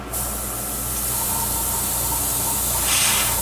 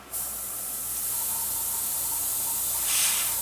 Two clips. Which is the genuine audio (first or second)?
first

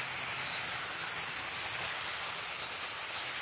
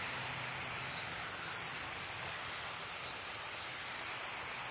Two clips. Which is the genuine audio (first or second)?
first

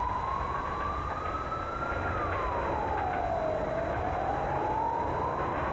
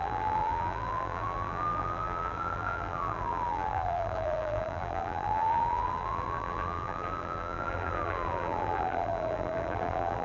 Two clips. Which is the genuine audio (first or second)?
first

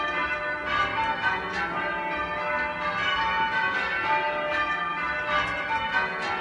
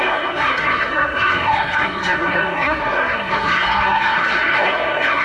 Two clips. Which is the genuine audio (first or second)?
first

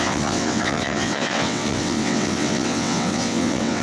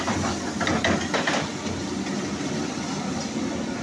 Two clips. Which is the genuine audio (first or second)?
second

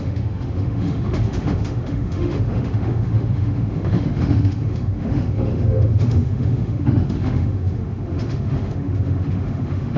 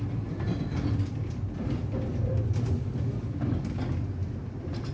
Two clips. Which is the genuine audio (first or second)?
second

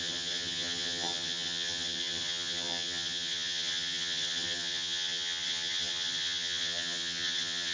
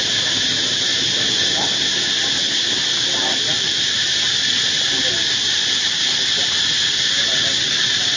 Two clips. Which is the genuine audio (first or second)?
second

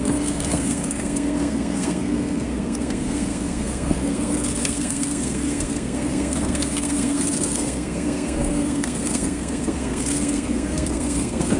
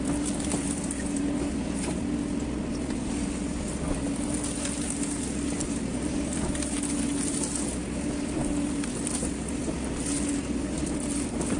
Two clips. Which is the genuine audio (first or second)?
second